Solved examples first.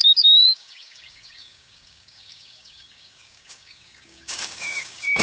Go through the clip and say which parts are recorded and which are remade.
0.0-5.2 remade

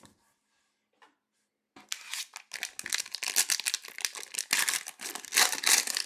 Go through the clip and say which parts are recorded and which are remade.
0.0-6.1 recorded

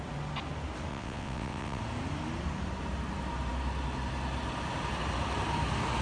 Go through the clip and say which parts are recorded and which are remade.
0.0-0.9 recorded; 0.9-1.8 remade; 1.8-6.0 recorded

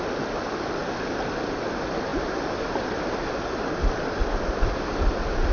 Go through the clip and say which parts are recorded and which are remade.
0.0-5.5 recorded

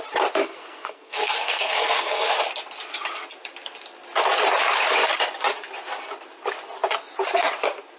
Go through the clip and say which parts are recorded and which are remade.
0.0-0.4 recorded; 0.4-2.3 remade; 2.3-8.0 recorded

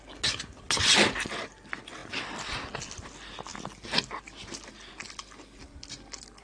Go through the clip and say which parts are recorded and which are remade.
0.0-6.4 recorded

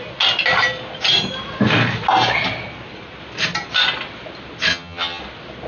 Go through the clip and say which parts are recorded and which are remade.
0.0-4.7 recorded; 4.7-5.2 remade; 5.2-5.7 recorded

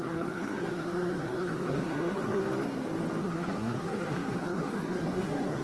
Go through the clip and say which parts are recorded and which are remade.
0.0-2.4 remade; 2.4-3.2 recorded; 3.2-5.6 remade